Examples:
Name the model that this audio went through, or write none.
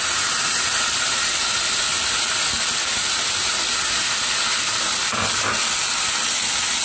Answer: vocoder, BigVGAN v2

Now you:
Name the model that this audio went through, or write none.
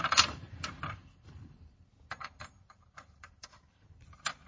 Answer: vocoder, BigVGAN v2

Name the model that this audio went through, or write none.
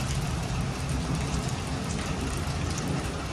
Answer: none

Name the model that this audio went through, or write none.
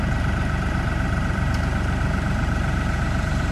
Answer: vocoder, BigVGAN v2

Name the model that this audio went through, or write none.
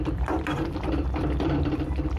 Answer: vocoder, BigVGAN v2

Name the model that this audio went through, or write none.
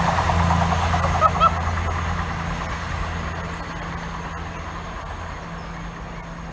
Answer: none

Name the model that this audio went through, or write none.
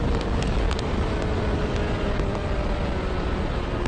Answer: vocoder, BigVGAN v2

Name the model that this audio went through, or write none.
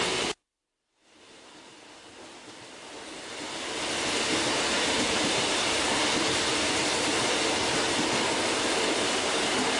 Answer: none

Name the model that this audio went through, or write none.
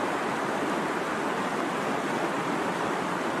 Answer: none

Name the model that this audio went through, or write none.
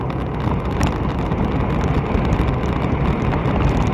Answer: none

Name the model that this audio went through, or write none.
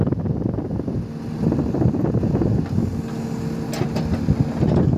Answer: none